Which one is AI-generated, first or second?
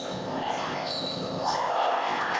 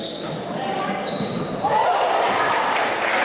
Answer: first